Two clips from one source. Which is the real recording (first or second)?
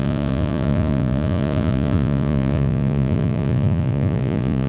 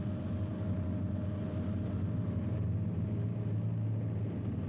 second